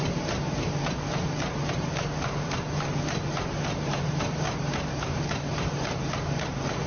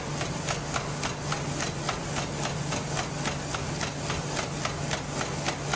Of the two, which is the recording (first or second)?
second